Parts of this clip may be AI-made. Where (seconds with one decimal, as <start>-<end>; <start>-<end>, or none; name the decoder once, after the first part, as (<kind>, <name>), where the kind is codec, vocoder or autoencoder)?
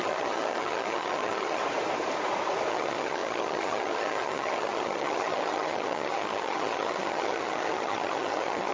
0.0-1.6 (vocoder, HiFi-GAN); 2.7-8.7